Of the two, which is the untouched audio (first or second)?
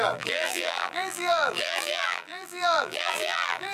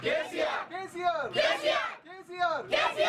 second